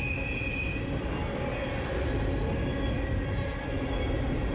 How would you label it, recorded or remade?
recorded